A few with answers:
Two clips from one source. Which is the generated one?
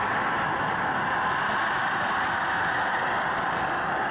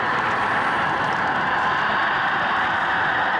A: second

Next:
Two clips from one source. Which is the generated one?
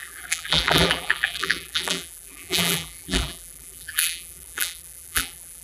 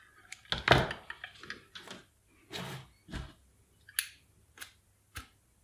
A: first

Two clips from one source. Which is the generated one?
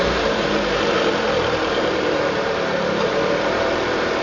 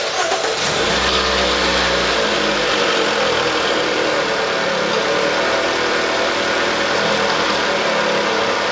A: first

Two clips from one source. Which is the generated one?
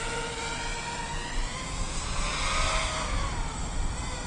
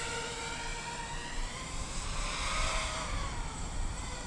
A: second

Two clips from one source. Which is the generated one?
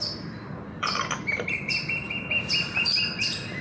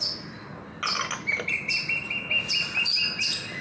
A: first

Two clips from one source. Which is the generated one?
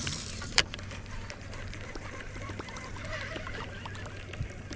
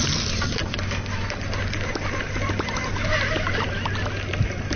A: first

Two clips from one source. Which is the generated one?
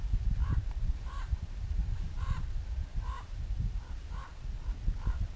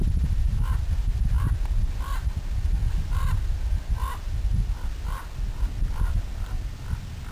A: first